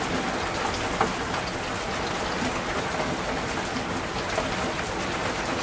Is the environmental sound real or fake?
real